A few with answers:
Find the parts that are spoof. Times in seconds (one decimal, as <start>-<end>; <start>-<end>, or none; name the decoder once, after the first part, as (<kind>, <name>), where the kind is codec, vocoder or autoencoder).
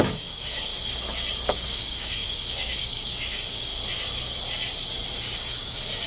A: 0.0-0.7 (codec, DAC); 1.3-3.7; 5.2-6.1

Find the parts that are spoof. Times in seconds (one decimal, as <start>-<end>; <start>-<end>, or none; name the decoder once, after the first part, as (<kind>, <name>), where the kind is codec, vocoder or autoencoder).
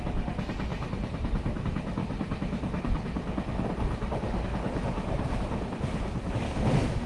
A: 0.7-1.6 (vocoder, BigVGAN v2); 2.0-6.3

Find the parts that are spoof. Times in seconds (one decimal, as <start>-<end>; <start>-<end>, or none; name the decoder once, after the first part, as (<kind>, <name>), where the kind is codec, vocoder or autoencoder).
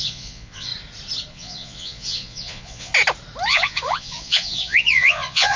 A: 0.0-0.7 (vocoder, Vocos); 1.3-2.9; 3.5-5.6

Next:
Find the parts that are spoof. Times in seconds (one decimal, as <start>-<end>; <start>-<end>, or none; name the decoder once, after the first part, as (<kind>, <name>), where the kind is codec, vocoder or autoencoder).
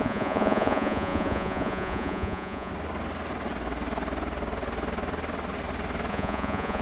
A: 0.0-2.7 (vocoder, Vocos); 6.1-6.8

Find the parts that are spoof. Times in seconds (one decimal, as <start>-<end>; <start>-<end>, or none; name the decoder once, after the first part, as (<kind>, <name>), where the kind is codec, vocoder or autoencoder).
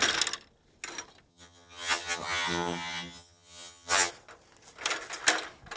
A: 1.3-4.1 (vocoder, HiFi-GAN)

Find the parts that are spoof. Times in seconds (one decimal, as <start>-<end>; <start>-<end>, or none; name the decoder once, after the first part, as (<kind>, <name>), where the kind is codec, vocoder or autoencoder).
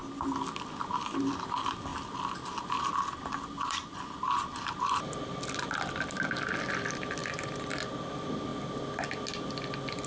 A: 0.5-1.9 (vocoder, BigVGAN v2); 3.2-8.5